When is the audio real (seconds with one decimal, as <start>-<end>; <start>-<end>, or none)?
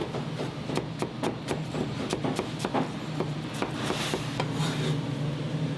0.0-5.8